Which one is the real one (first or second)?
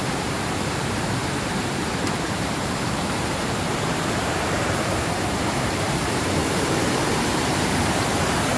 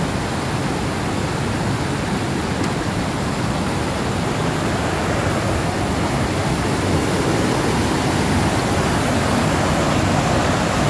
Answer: second